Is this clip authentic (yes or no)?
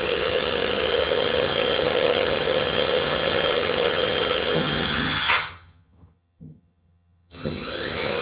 no